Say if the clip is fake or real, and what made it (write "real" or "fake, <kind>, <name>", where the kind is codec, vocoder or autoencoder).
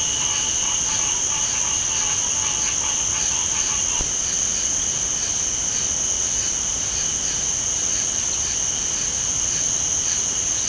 real